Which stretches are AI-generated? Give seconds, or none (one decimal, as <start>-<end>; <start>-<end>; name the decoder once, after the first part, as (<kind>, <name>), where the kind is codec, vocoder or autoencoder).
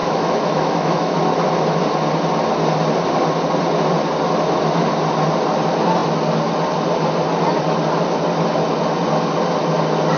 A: 0.0-1.2 (autoencoder, DAC-VAE)